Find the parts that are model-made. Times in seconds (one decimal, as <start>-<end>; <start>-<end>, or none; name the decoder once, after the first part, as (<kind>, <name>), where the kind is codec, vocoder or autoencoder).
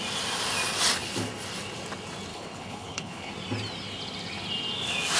2.3-3.3 (codec, HILCodec)